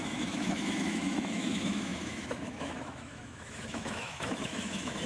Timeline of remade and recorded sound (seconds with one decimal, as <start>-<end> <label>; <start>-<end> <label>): 0.0-5.1 remade